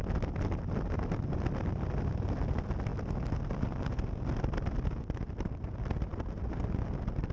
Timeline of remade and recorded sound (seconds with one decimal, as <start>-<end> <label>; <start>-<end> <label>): 0.0-7.3 recorded